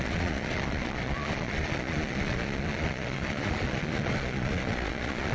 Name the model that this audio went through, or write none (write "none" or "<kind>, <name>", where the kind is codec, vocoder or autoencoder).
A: vocoder, Vocos